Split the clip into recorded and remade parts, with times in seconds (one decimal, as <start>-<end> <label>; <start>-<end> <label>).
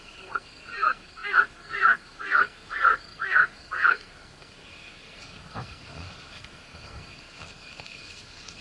0.0-8.6 remade